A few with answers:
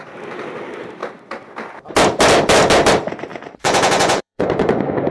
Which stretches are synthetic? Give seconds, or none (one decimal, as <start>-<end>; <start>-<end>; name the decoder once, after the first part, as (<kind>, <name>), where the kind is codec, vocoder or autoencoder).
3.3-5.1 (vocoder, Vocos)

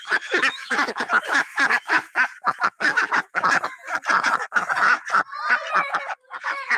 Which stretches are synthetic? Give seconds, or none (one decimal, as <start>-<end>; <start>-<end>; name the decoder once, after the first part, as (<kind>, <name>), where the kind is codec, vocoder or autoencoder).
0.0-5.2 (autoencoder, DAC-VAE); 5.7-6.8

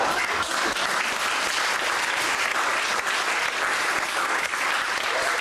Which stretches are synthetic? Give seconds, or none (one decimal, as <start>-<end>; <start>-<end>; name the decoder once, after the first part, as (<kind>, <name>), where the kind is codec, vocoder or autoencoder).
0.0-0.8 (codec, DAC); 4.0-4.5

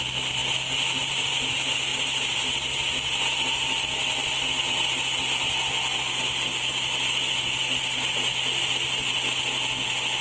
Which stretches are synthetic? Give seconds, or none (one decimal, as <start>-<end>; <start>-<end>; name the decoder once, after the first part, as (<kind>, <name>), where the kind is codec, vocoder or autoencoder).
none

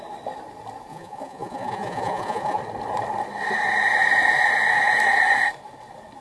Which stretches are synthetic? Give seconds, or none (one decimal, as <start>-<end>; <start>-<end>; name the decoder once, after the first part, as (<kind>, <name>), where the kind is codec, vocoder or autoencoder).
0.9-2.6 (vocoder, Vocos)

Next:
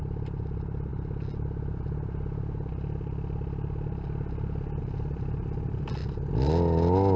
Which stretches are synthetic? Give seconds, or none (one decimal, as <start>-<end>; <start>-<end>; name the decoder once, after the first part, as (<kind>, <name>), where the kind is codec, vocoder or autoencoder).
none